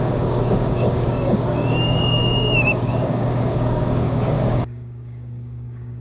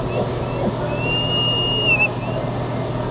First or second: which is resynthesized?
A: first